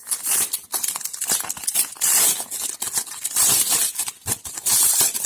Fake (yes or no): yes